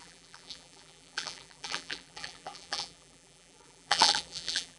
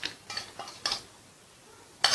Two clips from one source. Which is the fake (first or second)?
first